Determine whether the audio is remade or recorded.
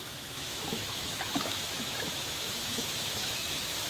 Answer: remade